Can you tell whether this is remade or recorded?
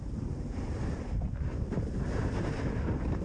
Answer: remade